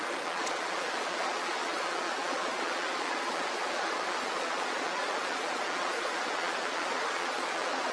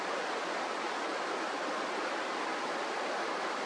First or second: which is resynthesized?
first